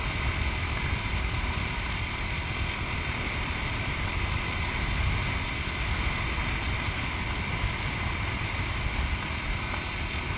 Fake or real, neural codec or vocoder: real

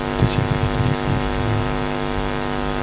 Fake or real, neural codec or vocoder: fake, autoencoder, DAC-VAE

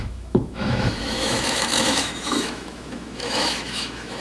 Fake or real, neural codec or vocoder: fake, autoencoder, DAC-VAE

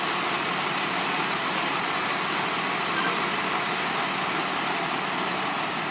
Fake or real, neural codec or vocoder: real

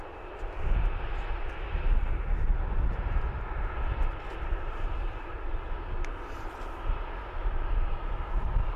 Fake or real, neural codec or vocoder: real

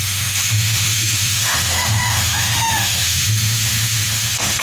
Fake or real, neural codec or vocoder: fake, autoencoder, DAC-VAE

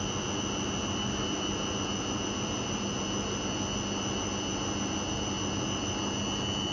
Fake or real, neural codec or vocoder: real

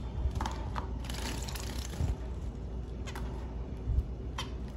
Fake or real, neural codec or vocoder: real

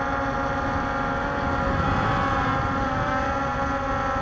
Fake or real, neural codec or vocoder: real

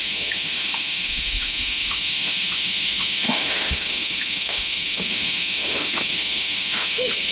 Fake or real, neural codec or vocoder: fake, autoencoder, DAC-VAE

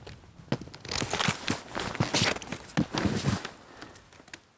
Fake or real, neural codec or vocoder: real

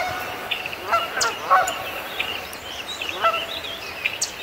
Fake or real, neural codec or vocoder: real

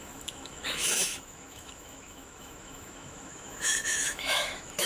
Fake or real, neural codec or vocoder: fake, autoencoder, DAC-VAE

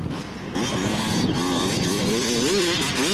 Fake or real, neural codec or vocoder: real